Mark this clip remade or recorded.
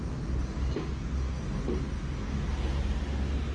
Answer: recorded